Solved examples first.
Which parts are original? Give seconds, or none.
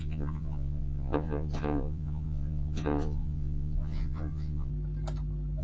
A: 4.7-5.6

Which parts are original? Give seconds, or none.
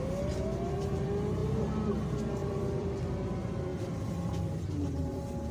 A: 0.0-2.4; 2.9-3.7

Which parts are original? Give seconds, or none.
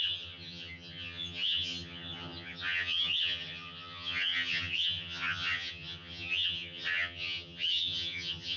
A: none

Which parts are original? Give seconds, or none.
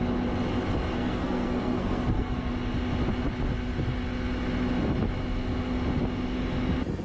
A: 0.0-0.9; 2.5-7.0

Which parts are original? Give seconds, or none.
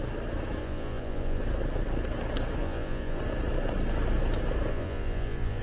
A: 0.0-0.6; 1.4-2.6; 3.2-4.7